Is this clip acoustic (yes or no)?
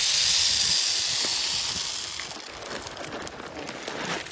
yes